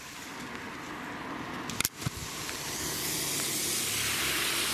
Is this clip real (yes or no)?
yes